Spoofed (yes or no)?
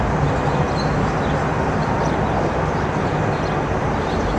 no